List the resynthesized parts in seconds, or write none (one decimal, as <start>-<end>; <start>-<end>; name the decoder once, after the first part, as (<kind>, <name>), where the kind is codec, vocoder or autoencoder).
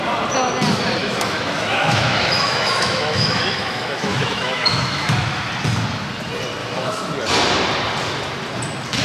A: 1.0-5.5 (autoencoder, DAC-VAE); 6.6-7.1